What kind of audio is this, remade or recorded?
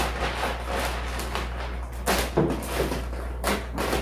recorded